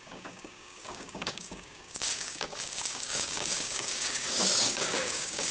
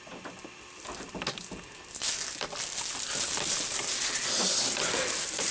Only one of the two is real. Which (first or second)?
second